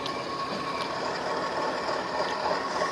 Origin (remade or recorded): recorded